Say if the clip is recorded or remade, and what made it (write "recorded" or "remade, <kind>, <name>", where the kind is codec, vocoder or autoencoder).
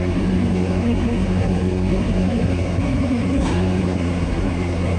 remade, codec, SNAC